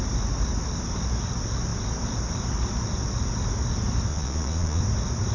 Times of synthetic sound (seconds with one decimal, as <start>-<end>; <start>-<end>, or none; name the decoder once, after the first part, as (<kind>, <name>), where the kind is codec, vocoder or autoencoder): 4.1-4.8 (vocoder, Vocos)